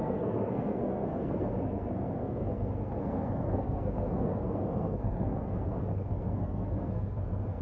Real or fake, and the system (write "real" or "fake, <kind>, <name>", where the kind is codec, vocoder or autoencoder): fake, codec, SNAC